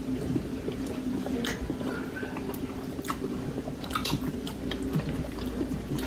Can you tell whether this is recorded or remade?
remade